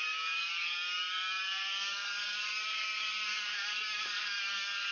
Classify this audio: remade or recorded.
remade